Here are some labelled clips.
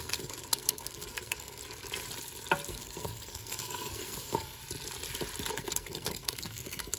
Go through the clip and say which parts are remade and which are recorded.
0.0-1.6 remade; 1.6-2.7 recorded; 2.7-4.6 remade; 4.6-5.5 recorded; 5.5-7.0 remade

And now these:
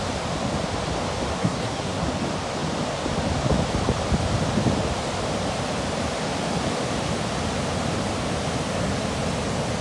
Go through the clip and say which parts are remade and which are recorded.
0.0-1.3 recorded; 1.3-2.0 remade; 2.0-9.8 recorded